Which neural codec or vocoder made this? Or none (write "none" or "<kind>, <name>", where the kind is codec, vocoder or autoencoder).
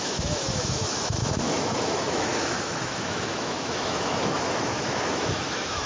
autoencoder, DAC-VAE